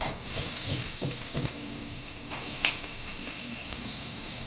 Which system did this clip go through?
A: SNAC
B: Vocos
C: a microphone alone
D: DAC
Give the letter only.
D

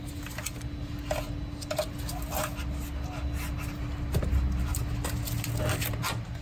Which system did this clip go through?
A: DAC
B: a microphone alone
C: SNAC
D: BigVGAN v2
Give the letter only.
B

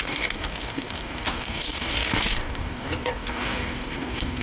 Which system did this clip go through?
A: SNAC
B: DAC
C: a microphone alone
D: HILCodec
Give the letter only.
B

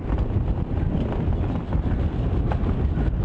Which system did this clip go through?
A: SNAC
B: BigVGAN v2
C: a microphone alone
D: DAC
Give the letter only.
C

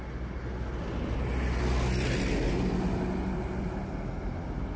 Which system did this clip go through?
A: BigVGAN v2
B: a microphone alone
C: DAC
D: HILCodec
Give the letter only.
B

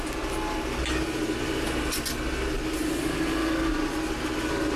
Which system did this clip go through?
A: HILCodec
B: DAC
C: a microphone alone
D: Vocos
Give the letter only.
C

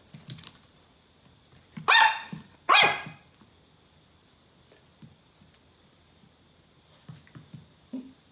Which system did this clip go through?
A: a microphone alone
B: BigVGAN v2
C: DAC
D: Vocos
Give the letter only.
A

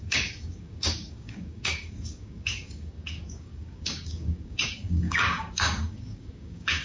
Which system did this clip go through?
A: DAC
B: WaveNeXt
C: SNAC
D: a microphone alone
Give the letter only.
A